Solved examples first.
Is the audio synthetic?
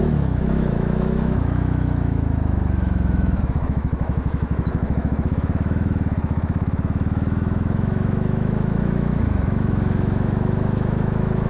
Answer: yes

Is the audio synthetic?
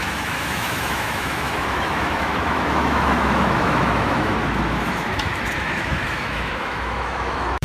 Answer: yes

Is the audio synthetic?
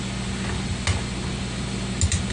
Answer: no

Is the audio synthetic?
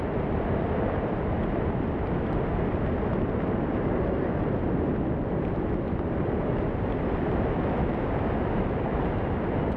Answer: no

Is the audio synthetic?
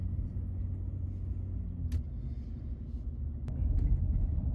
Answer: no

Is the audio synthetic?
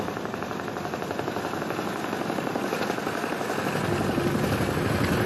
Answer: no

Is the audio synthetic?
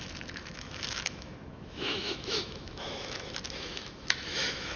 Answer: yes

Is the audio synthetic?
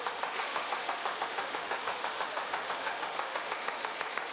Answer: yes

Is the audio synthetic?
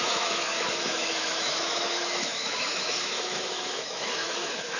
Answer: yes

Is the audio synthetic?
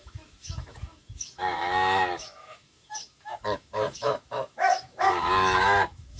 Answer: yes